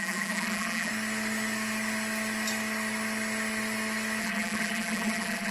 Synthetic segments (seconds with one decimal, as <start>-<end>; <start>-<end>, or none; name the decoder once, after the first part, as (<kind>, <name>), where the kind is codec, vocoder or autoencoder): 0.0-0.9 (vocoder, BigVGAN v2); 4.2-5.5

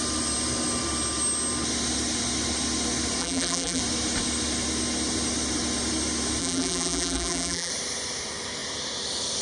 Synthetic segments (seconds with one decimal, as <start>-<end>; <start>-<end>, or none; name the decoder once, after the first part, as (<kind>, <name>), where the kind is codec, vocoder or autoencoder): 3.2-3.8 (vocoder, BigVGAN v2); 6.4-7.7

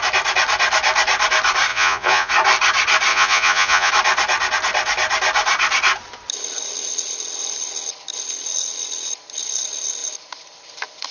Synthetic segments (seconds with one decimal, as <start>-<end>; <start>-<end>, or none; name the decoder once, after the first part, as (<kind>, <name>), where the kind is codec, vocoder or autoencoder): 1.7-2.3 (vocoder, Vocos); 3.1-3.9

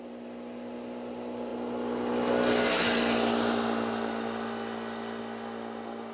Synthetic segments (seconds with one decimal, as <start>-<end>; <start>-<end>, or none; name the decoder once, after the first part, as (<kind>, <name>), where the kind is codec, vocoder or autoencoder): none